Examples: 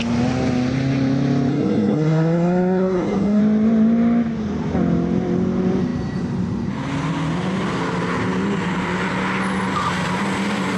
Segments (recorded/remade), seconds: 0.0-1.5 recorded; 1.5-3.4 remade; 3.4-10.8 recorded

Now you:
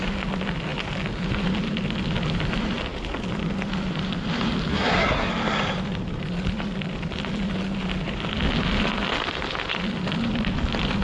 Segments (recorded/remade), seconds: 0.0-4.7 recorded; 4.7-5.3 remade; 5.3-11.0 recorded

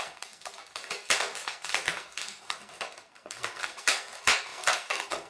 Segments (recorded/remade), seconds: 0.0-5.3 remade

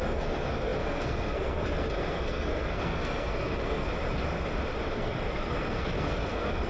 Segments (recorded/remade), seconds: 0.0-3.9 remade; 3.9-4.9 recorded; 4.9-6.7 remade